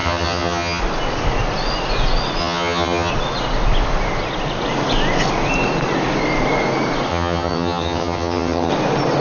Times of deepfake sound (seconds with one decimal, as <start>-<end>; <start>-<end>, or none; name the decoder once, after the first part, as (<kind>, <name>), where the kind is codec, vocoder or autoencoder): 0.0-0.8 (vocoder, HiFi-GAN); 2.4-3.1; 7.1-8.7

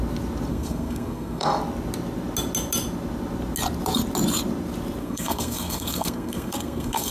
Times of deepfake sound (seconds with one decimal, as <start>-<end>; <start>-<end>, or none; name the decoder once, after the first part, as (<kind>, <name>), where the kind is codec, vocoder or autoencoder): 0.5-1.5 (codec, SNAC); 5.0-7.1